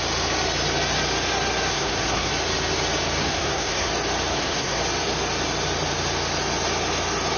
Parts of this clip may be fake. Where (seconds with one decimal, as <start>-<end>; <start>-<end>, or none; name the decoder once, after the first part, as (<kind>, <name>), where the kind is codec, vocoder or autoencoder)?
1.7-2.3 (codec, SNAC); 3.2-3.9; 4.3-4.8